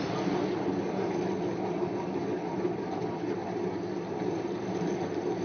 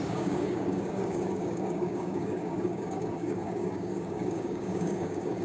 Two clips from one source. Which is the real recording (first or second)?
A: first